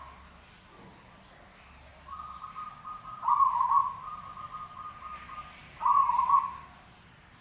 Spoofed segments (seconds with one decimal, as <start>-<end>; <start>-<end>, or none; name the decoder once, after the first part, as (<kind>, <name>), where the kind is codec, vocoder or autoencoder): none